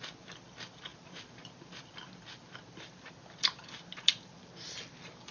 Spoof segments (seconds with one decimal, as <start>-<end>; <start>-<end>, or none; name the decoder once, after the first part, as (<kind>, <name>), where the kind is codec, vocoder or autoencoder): none